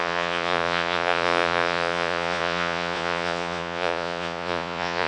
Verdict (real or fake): fake